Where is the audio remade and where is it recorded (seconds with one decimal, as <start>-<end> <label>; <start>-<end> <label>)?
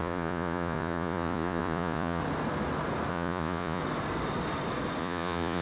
0.0-2.2 remade; 2.2-3.1 recorded; 3.1-3.8 remade; 3.8-5.0 recorded; 5.0-5.6 remade